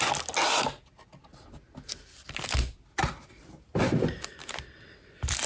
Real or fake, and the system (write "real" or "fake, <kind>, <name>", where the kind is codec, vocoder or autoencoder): real